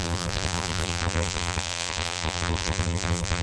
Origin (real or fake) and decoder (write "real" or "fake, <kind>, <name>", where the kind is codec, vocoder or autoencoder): fake, vocoder, BigVGAN v2